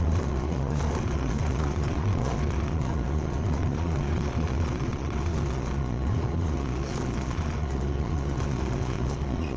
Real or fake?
fake